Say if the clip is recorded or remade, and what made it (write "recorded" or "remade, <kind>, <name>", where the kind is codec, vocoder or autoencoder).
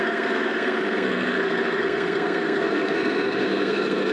remade, codec, SNAC